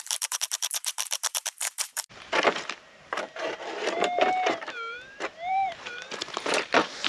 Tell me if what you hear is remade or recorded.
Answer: remade